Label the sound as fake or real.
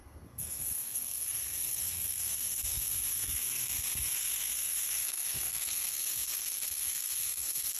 fake